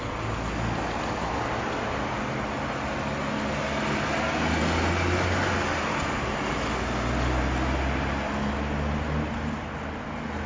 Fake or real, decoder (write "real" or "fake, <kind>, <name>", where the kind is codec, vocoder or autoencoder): real